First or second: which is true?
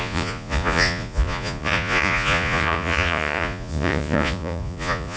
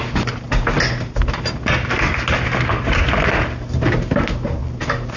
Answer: second